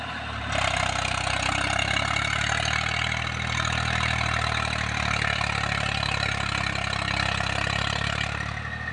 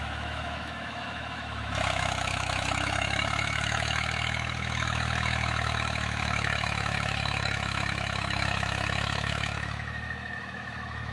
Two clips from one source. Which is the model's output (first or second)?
second